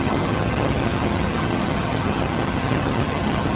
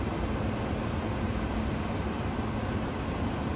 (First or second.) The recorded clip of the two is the second